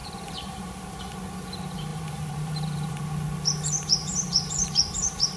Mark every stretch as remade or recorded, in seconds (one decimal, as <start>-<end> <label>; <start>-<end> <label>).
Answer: 0.0-1.0 remade; 1.0-1.9 recorded; 1.9-3.0 remade; 3.0-4.0 recorded; 4.0-5.4 remade